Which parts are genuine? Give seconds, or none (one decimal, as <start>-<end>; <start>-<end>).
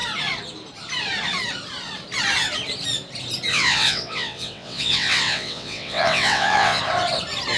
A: 0.0-3.5; 6.8-7.6